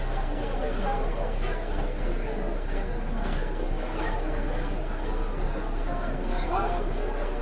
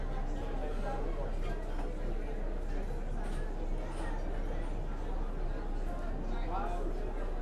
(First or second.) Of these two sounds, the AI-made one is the first